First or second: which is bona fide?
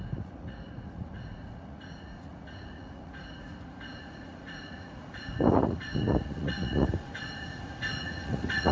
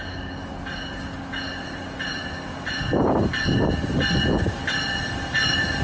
second